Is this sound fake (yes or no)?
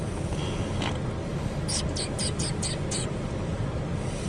no